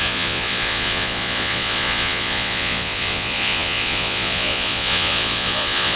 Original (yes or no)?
no